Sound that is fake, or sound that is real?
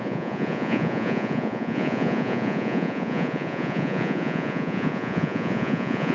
fake